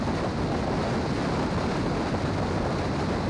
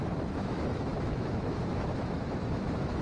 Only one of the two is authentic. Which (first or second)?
first